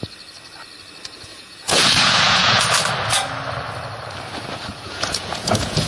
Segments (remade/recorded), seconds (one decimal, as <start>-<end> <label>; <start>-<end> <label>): 0.0-1.3 recorded; 1.3-2.6 remade; 2.6-4.7 recorded; 4.7-5.9 remade